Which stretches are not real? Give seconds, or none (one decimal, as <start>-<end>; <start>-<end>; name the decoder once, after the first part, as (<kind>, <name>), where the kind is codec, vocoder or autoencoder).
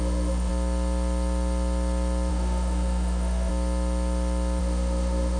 0.0-0.5 (autoencoder, DAC-VAE); 2.3-3.5; 4.6-5.4